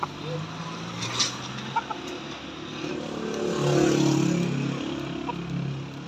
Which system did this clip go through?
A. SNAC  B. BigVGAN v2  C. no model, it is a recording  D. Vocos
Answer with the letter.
C